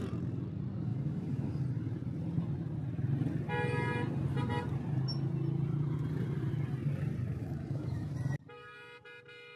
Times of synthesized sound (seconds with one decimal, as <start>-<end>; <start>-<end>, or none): 0.9-1.5; 7.3-8.1